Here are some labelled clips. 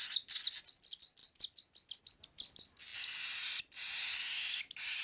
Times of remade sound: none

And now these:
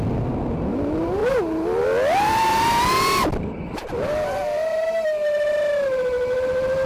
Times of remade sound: 4.7-5.5 (vocoder, BigVGAN v2)

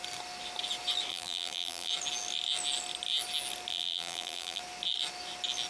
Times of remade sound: 1.1-1.9 (vocoder, BigVGAN v2); 3.7-4.6

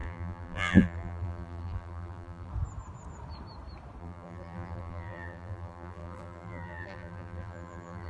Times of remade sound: 0.0-2.5 (vocoder, BigVGAN v2); 4.0-8.1

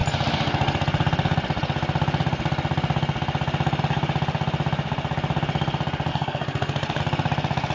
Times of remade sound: 6.1-7.0 (codec, SNAC)

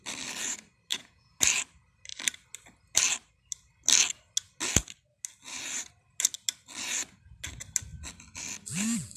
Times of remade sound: 0.9-1.4 (vocoder, Vocos)

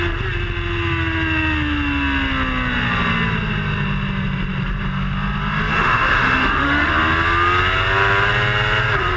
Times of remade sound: 5.7-6.9 (autoencoder, DAC-VAE)